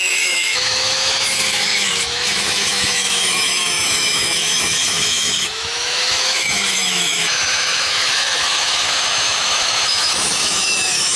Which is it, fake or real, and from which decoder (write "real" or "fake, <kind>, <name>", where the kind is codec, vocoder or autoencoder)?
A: fake, autoencoder, DAC-VAE